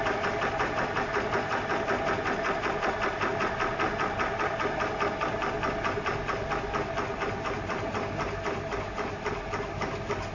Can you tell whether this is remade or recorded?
recorded